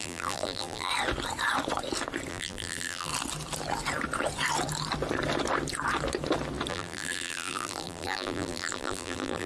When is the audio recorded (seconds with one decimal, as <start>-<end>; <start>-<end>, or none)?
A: 0.9-2.3; 3.1-6.7